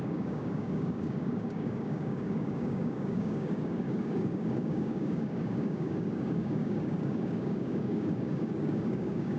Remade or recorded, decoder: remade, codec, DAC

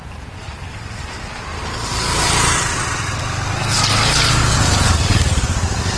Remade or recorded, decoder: recorded